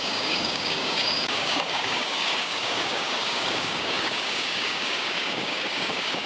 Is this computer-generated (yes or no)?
yes